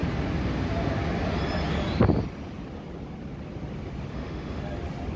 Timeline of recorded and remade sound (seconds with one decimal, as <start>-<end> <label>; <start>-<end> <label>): 0.0-4.1 recorded; 4.1-4.6 remade; 4.6-5.2 recorded